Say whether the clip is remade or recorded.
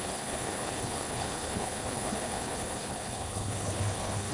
remade